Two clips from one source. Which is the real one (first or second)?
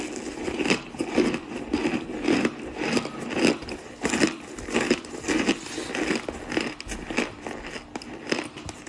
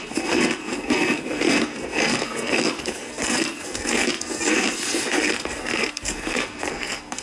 first